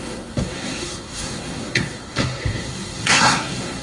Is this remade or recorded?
remade